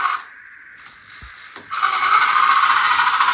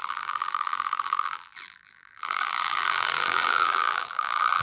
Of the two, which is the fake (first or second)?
second